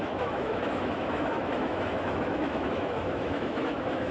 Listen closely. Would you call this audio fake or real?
fake